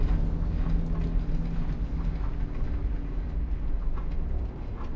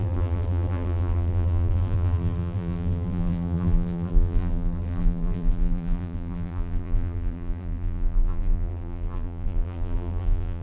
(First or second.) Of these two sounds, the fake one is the second